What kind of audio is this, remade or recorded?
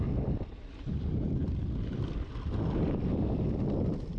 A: remade